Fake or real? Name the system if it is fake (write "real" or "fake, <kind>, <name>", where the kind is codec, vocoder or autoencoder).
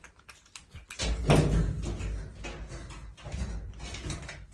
real